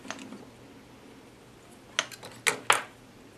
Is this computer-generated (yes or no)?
no